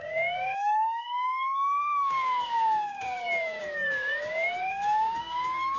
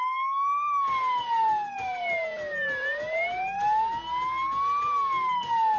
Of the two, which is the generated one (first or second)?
first